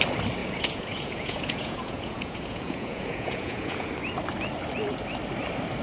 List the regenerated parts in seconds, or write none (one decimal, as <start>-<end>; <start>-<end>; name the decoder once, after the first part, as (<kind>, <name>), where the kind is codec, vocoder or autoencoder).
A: 0.4-3.9 (vocoder, Vocos)